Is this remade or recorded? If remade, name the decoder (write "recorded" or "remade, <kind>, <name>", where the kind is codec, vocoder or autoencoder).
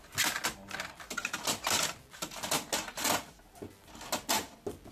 recorded